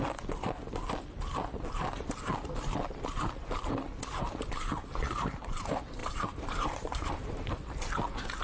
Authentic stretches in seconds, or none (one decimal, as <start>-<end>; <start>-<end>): 0.0-6.0; 7.5-8.4